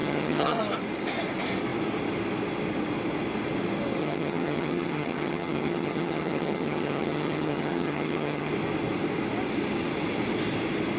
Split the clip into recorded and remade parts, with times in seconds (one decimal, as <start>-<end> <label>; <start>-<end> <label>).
0.0-0.6 remade; 0.6-4.0 recorded; 4.0-8.5 remade; 8.5-11.0 recorded